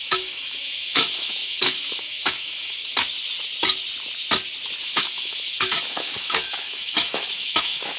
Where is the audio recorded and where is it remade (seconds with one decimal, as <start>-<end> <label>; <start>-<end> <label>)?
0.0-2.8 remade; 2.8-4.8 recorded; 4.8-8.0 remade